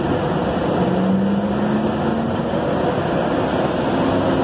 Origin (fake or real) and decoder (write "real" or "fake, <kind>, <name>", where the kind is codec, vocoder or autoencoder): real